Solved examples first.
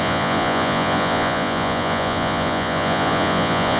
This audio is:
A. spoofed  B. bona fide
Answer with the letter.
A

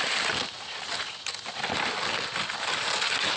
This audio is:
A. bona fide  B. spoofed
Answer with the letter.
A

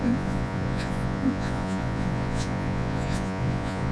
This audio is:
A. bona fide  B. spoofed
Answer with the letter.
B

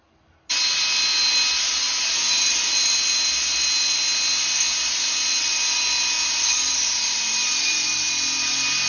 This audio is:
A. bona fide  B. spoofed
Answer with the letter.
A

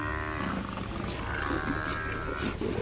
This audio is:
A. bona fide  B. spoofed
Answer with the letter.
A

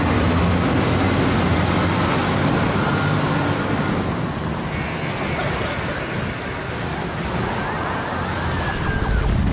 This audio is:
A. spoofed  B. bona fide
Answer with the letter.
B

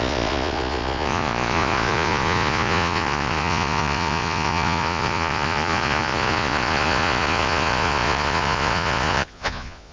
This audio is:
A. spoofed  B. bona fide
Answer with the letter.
A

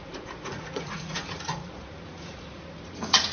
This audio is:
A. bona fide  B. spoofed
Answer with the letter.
B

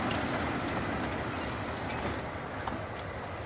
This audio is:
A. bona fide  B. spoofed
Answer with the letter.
A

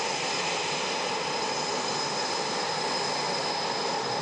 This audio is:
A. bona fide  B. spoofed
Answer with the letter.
A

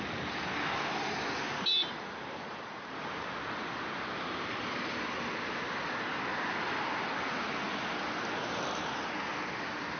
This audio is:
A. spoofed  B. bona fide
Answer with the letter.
B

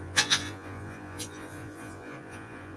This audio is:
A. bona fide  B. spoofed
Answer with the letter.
B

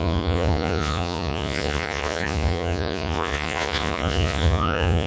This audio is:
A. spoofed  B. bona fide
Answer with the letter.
A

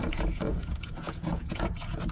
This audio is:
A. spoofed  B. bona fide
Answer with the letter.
A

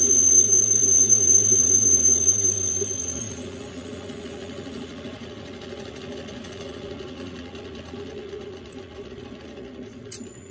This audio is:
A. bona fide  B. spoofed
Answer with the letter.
B